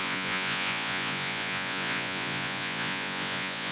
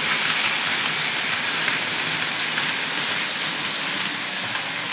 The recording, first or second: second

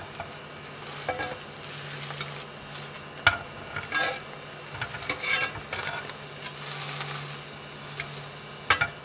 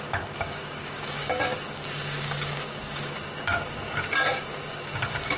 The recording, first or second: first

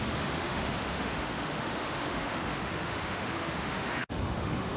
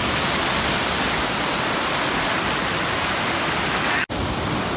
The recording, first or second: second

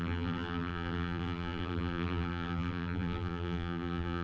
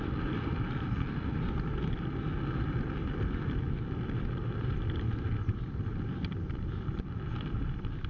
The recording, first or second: second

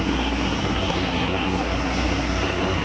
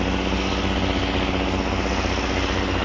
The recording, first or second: second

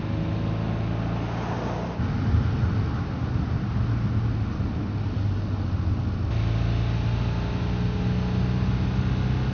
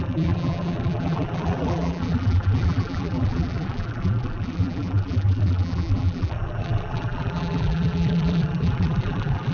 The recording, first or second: first